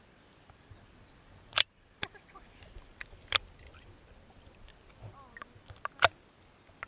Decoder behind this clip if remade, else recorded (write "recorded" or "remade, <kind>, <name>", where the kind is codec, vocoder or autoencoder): recorded